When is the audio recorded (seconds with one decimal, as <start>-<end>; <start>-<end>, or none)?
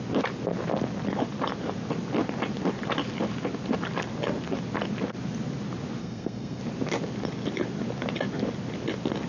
0.0-6.0; 6.6-9.3